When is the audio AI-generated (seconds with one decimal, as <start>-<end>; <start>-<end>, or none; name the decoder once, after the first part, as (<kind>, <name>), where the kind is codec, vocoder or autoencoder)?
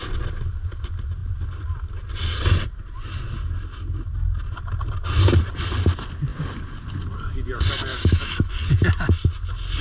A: 7.9-8.5 (autoencoder, DAC-VAE)